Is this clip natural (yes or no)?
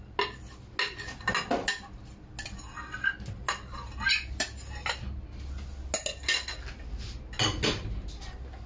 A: yes